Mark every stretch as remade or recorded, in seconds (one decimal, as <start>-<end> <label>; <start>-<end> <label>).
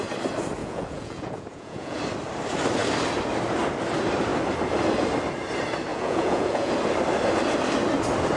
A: 0.0-0.6 recorded; 0.6-2.0 remade; 2.0-5.9 recorded; 5.9-6.7 remade; 6.7-8.4 recorded